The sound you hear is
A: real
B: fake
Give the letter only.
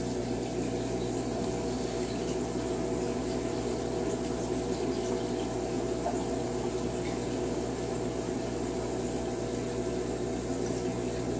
A